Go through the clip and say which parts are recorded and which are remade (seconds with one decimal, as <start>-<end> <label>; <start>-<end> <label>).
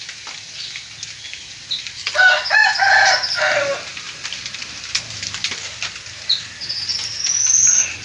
0.0-3.9 recorded; 3.9-4.7 remade; 4.7-8.0 recorded